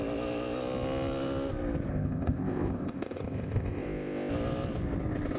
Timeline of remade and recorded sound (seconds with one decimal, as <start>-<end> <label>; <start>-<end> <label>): 0.0-1.9 recorded; 1.9-4.3 remade; 4.3-5.4 recorded